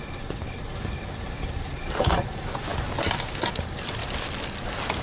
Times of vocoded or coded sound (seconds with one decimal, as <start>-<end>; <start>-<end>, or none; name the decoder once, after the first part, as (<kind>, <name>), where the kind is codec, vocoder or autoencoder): none